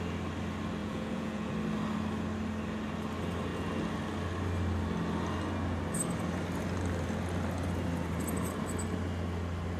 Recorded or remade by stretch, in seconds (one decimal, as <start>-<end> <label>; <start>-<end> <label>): 0.0-0.8 recorded; 0.8-1.5 remade; 1.5-9.8 recorded